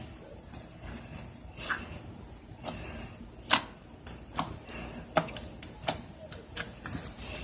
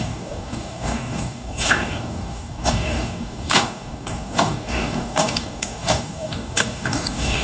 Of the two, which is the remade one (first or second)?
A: second